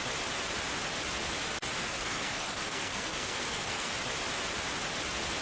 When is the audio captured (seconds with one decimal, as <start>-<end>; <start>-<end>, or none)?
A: 0.0-1.8; 3.9-5.4